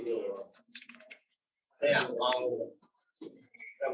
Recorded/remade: remade